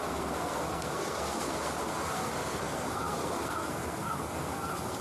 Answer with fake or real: fake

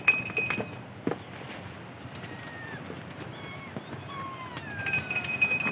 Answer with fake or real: real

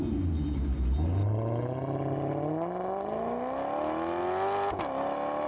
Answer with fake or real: real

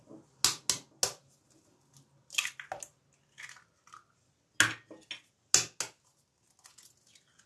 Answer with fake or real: real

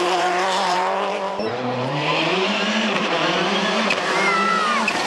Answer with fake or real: fake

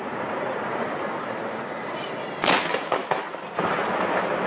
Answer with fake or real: real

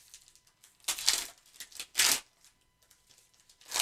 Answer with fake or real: real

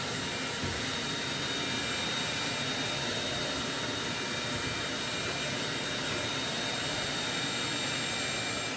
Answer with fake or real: real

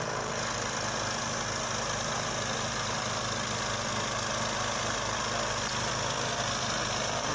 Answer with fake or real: real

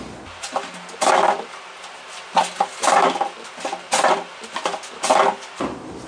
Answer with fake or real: real